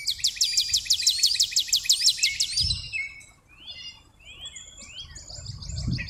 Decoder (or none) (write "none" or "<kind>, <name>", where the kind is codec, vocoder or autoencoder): none